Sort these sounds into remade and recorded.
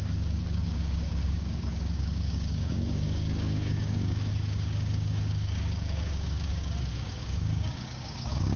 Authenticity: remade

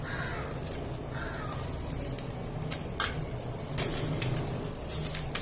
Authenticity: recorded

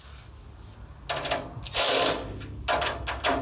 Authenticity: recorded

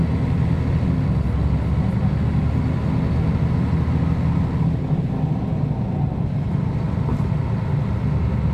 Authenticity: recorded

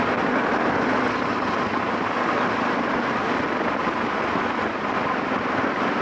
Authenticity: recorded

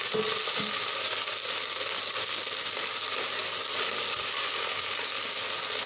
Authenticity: recorded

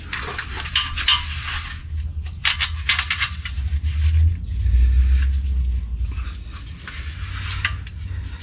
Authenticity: recorded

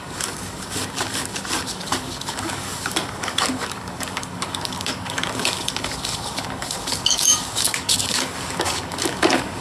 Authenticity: remade